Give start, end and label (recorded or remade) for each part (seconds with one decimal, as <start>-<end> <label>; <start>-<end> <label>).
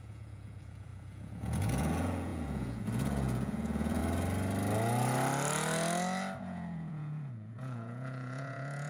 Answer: 0.0-4.0 remade; 4.0-6.4 recorded; 6.4-8.9 remade